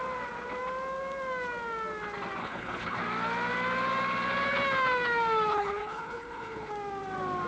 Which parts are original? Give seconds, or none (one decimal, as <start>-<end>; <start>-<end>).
0.0-2.4; 3.0-5.5; 6.7-7.5